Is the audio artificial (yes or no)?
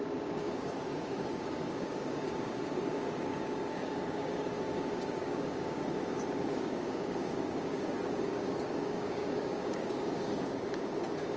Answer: yes